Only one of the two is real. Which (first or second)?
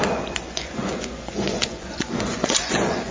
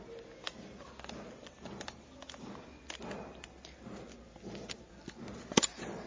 second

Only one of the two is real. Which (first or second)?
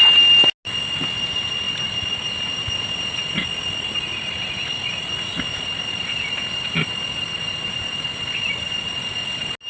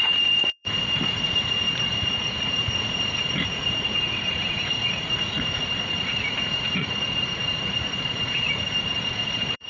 first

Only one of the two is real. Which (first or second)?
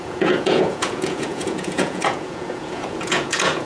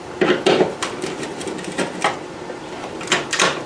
second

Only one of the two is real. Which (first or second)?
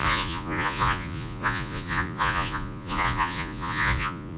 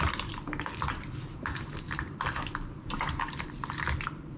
second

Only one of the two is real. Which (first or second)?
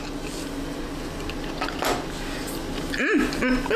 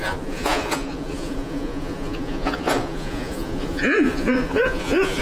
first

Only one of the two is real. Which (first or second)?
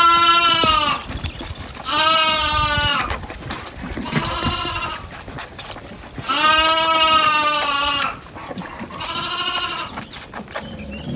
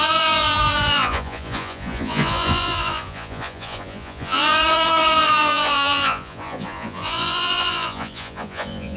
first